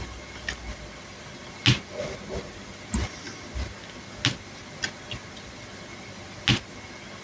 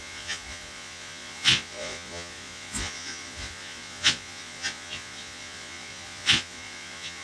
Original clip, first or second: first